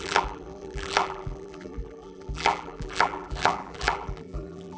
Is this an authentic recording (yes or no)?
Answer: no